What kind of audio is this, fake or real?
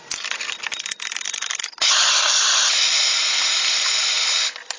real